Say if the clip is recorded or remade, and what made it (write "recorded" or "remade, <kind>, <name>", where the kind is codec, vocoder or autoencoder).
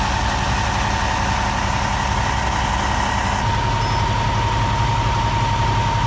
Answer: recorded